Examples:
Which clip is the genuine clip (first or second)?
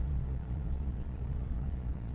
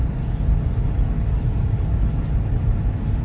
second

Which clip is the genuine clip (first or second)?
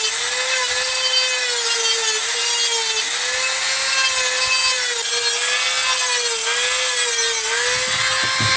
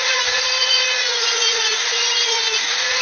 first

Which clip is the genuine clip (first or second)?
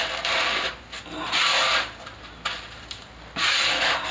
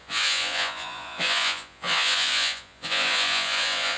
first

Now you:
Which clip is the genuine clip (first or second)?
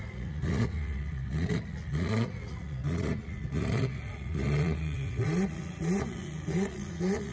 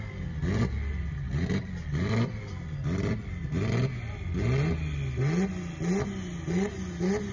second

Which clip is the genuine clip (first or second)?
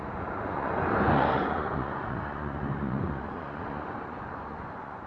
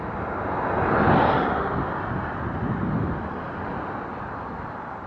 second